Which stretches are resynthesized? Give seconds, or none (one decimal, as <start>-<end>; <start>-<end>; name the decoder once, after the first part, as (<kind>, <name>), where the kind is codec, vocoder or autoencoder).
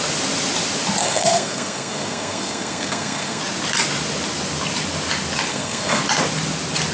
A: 1.0-3.4 (codec, SNAC); 5.5-6.0